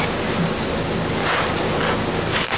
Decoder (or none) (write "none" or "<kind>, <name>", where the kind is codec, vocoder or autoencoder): none